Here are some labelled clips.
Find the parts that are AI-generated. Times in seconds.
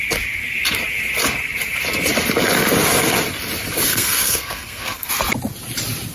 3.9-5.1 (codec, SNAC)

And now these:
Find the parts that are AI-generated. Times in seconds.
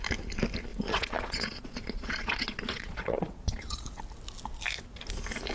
0.7-4.0 (vocoder, Vocos)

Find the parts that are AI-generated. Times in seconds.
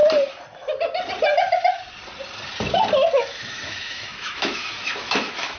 3.2-5.6 (autoencoder, DAC-VAE)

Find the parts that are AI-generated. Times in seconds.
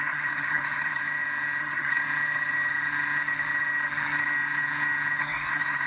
0.0-1.0 (codec, SNAC); 1.6-2.0; 5.2-5.9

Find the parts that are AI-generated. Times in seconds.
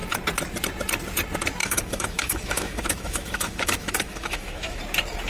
1.6-4.8 (autoencoder, DAC-VAE)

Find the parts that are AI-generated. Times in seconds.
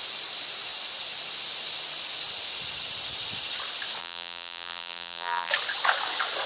4.0-5.5 (vocoder, BigVGAN v2)